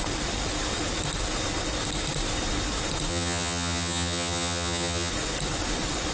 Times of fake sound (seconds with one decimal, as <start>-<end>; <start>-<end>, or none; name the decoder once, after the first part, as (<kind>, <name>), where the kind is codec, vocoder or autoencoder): 3.1-5.1 (vocoder, HiFi-GAN)